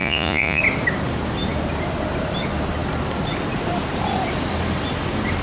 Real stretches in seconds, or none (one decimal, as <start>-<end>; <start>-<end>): 0.6-5.4